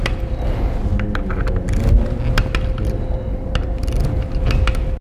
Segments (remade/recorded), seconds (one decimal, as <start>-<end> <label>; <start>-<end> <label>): 0.0-5.0 recorded